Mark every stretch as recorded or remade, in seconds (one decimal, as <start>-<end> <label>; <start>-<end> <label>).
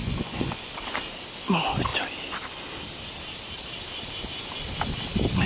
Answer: 0.0-0.7 remade; 0.7-5.5 recorded